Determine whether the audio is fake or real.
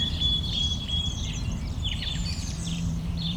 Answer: fake